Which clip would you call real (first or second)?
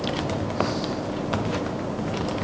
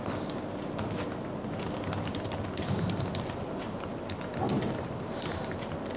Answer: second